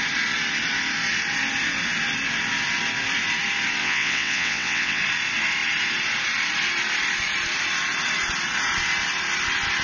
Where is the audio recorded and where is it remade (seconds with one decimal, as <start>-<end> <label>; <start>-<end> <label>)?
0.0-3.8 recorded; 3.8-5.0 remade; 5.0-9.8 recorded

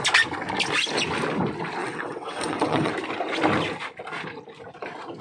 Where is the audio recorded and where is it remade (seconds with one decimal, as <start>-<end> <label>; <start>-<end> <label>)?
0.0-1.8 recorded; 1.8-2.9 remade; 2.9-5.2 recorded

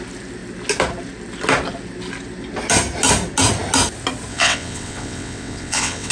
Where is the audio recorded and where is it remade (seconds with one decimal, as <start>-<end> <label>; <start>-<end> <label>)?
0.0-4.3 recorded; 4.3-6.1 remade

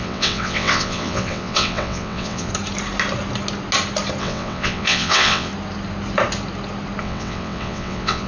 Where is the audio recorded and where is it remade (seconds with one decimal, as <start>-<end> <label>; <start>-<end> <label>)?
0.0-2.5 remade; 2.5-4.2 recorded; 4.2-5.5 remade; 5.5-7.0 recorded; 7.0-8.3 remade

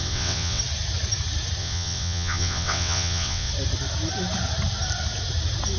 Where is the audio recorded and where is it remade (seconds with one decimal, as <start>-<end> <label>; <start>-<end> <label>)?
0.0-0.6 remade; 0.6-1.6 recorded; 1.6-3.5 remade; 3.5-5.8 recorded